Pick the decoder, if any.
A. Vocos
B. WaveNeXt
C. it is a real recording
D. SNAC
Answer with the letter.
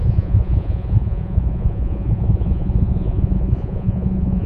A